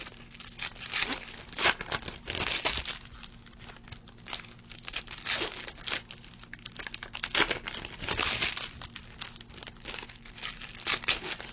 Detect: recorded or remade recorded